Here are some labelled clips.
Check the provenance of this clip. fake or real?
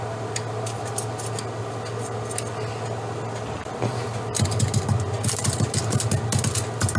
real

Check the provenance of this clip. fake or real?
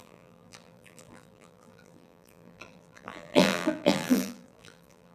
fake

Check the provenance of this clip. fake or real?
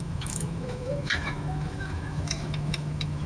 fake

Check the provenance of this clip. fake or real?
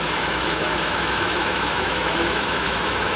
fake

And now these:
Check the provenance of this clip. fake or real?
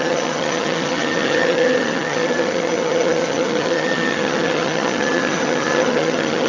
fake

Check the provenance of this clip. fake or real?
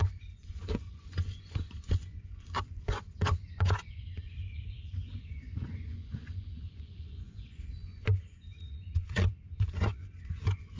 fake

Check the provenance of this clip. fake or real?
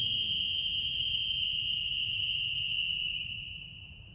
fake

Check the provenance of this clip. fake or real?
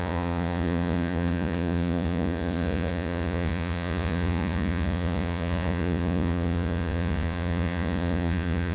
fake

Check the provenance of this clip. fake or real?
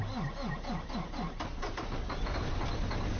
real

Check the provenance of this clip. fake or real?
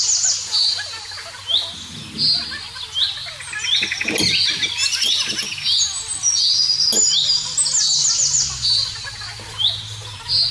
real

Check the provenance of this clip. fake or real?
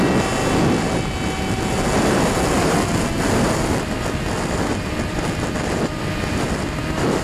real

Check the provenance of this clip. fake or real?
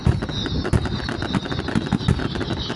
real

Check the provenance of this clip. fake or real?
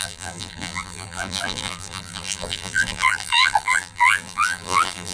fake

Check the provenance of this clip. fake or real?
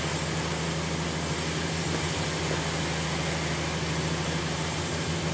real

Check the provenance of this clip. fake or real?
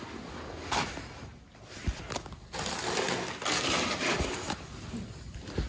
real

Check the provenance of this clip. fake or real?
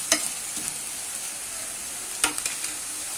real